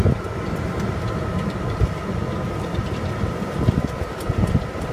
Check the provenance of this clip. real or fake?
fake